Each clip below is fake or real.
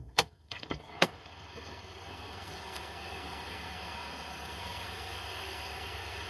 fake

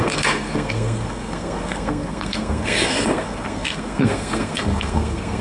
fake